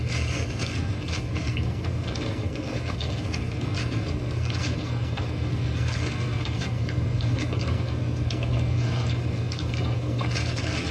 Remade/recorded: remade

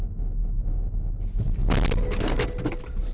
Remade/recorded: recorded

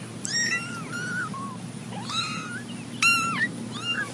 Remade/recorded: recorded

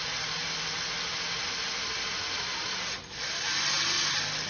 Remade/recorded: recorded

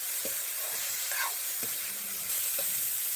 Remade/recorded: remade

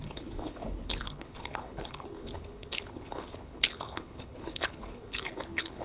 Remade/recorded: remade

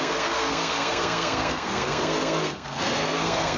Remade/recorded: remade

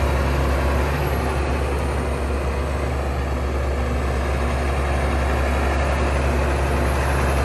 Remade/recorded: recorded